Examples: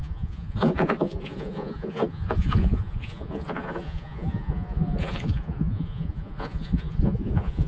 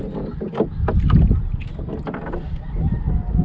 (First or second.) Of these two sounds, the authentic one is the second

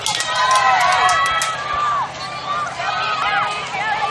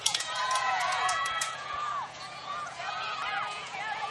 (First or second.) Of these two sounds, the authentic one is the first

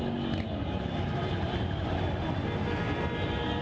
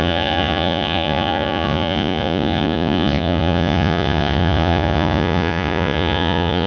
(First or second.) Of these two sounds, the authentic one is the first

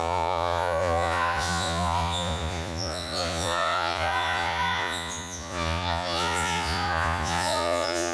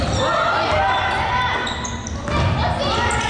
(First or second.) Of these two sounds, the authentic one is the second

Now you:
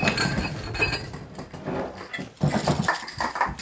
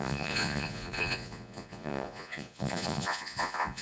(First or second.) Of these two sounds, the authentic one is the first